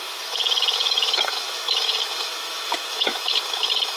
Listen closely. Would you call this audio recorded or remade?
remade